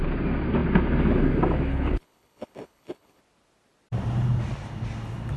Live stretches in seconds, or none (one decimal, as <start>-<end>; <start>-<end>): 0.0-1.7; 3.2-5.4